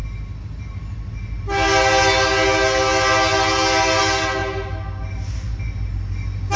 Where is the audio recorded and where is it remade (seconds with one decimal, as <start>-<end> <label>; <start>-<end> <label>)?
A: 0.0-6.6 recorded